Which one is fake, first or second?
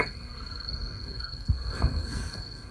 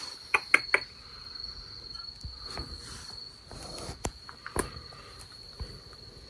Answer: first